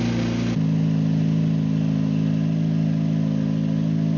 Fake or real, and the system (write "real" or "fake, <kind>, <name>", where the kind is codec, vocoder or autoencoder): real